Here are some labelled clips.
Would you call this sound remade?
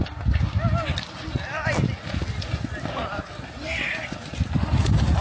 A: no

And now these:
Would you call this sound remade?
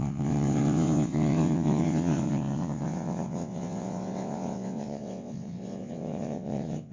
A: yes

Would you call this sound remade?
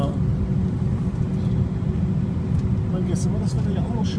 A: no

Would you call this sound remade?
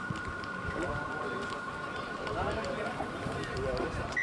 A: no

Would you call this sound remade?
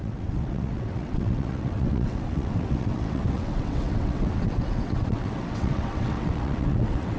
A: yes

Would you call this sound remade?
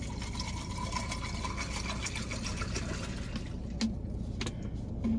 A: no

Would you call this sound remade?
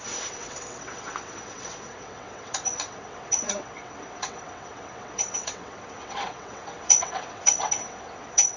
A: yes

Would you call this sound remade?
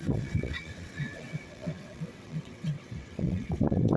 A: yes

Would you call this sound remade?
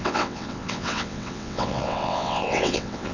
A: yes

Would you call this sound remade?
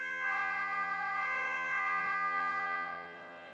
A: yes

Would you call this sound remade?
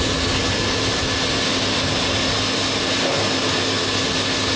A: no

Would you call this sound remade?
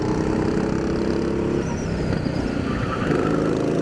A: no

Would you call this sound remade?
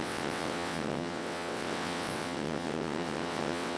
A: yes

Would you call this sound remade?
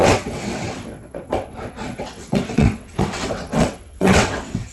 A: yes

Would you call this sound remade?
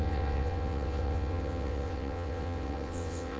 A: yes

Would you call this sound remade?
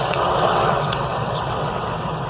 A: yes